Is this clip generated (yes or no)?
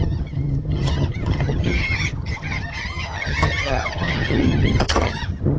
yes